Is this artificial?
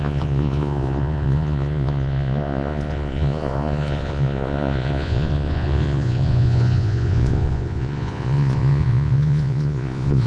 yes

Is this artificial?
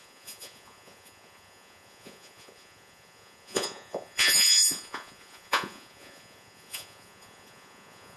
yes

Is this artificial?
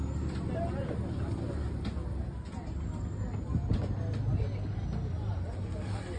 no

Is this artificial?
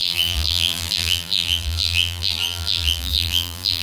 yes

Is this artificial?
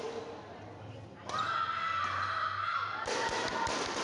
no